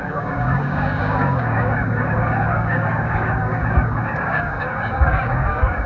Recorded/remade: remade